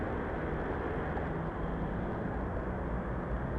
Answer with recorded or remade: recorded